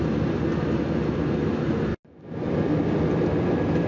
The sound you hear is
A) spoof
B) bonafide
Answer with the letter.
B